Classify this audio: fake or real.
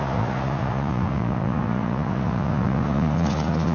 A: fake